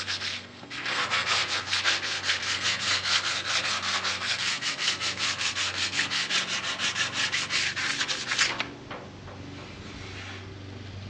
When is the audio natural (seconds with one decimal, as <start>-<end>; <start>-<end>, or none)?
6.2-11.1